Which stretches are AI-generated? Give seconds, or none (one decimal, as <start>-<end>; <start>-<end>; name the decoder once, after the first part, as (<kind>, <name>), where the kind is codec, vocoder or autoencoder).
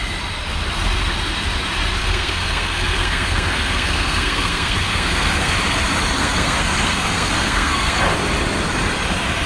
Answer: 2.0-5.5 (codec, SNAC); 6.2-8.0